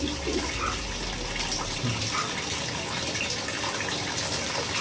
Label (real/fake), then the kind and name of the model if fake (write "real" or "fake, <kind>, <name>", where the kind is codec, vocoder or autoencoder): real